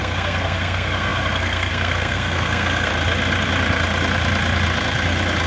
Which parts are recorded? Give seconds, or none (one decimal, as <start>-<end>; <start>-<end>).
2.9-5.5